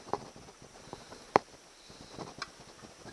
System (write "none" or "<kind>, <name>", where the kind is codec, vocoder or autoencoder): none